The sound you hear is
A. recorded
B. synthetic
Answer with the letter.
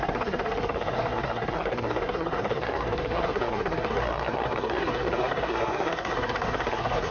B